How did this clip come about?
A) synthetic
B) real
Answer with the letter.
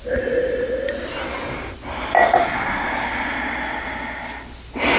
B